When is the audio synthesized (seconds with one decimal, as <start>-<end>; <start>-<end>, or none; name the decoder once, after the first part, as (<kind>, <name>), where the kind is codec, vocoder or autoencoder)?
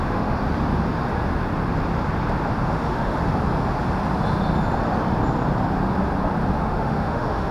0.0-0.4 (autoencoder, DAC-VAE); 2.7-3.2; 6.6-7.5